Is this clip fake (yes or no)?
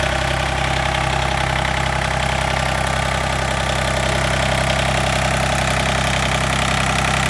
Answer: no